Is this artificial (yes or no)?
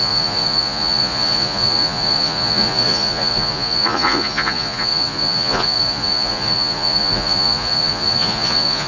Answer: yes